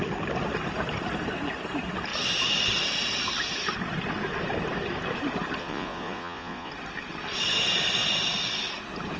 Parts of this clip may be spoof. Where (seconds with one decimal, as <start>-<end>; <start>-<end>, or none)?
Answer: 5.6-6.7